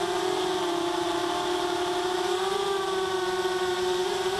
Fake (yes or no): yes